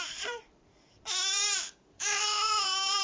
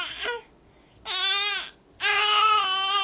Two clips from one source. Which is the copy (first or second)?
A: first